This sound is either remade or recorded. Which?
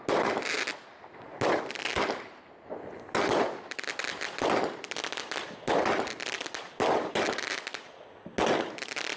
recorded